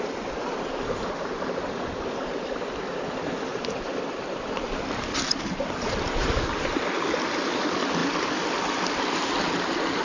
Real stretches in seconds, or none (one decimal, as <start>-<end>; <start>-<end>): 0.0-10.0